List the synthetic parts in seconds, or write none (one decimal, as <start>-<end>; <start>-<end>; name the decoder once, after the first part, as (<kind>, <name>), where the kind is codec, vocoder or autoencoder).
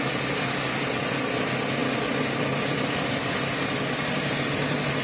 none